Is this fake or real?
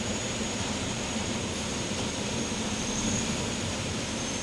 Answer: fake